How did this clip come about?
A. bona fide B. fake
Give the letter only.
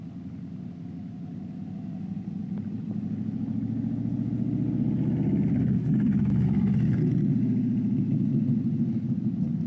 A